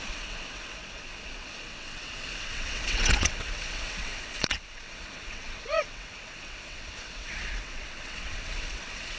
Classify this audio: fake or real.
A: fake